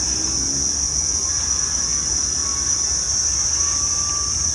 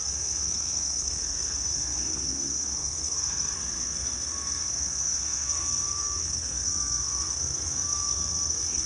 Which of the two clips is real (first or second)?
first